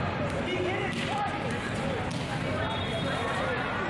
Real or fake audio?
real